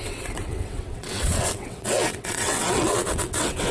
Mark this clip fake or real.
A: fake